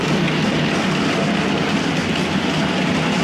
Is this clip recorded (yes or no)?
yes